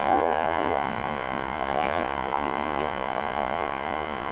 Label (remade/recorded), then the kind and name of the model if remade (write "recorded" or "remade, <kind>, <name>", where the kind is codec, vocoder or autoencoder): remade, vocoder, Vocos